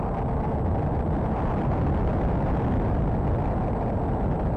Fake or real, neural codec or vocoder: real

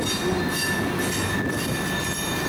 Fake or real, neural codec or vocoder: real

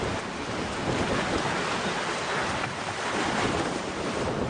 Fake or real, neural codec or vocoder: real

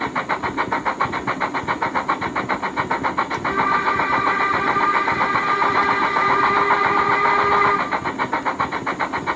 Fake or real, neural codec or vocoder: real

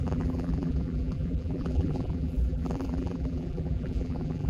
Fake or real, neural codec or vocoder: fake, vocoder, BigVGAN v2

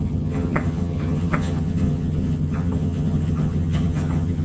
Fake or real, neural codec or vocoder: fake, vocoder, HiFi-GAN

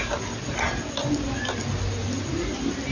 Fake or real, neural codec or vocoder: real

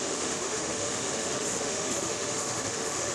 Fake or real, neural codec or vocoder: fake, autoencoder, DAC-VAE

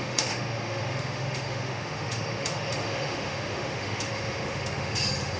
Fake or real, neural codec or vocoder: fake, autoencoder, DAC-VAE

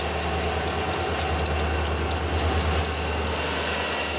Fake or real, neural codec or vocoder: real